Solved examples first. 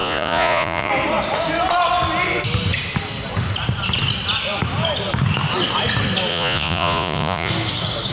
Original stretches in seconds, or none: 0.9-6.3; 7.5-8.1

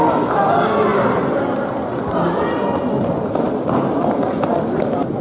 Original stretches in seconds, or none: 0.0-5.2